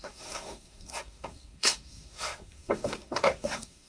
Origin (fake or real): fake